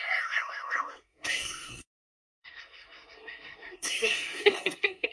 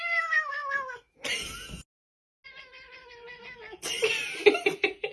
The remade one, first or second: first